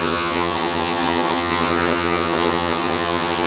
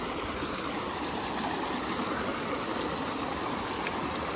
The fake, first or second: first